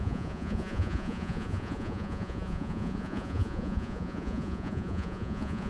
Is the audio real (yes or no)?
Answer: no